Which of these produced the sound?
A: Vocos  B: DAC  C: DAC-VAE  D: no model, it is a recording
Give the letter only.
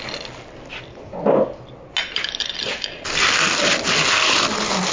D